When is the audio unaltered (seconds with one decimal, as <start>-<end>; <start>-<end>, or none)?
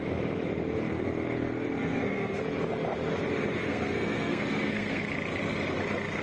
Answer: 0.0-1.8; 2.4-3.6; 5.0-6.2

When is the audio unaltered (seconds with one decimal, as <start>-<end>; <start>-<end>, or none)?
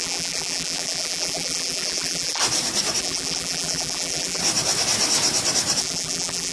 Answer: 2.4-3.0; 4.4-5.8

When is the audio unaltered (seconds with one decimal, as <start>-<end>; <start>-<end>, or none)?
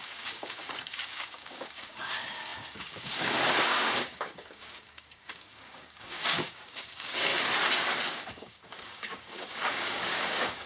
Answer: 7.3-8.1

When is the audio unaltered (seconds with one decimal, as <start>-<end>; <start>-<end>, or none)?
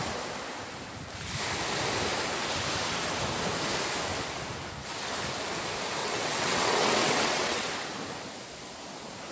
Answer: 0.0-6.0; 7.7-9.3